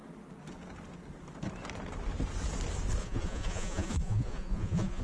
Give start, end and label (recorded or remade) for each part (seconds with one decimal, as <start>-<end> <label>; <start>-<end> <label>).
0.0-3.0 recorded; 3.0-5.0 remade